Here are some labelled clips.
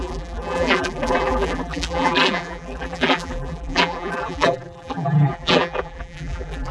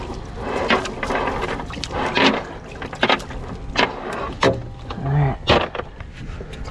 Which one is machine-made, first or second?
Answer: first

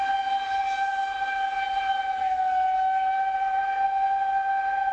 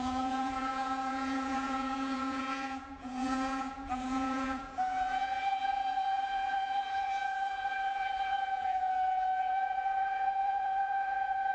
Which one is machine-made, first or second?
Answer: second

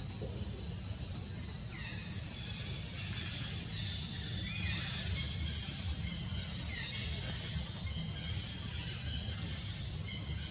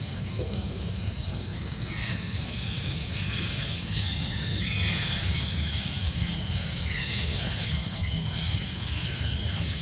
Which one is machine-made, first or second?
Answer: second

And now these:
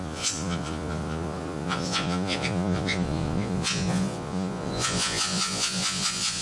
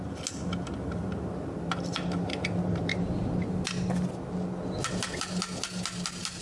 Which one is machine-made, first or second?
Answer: first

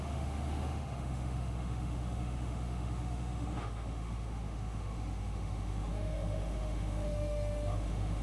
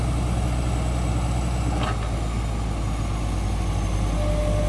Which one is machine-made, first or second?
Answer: first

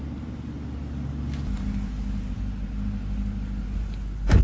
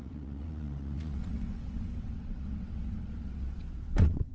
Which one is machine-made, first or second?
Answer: second